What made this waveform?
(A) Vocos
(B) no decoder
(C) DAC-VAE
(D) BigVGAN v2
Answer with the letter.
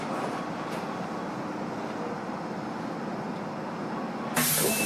B